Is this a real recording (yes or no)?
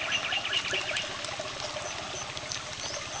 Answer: yes